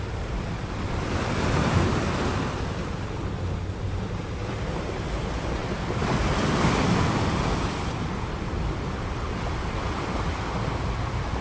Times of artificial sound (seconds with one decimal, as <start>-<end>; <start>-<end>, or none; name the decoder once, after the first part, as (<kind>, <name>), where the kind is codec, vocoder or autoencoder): 5.6-7.5 (vocoder, BigVGAN v2)